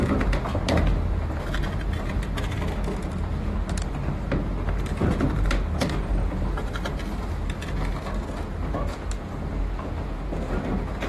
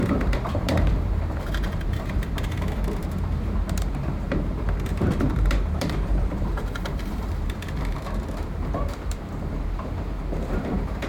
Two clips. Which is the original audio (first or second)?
first